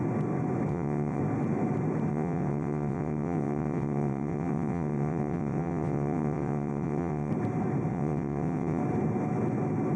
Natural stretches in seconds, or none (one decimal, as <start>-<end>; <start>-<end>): 0.0-0.7; 1.2-2.1; 7.3-7.9; 8.8-10.0